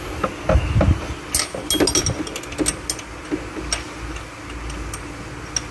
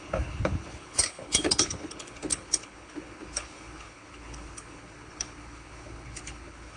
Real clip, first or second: first